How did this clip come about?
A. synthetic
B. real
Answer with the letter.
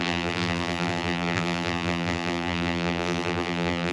A